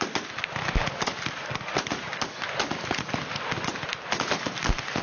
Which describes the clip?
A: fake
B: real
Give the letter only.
B